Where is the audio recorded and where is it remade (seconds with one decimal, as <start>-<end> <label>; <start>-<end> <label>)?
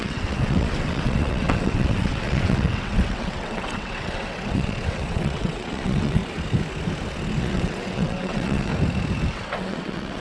0.0-6.2 remade; 6.2-7.4 recorded; 7.4-8.7 remade; 8.7-9.3 recorded; 9.3-10.2 remade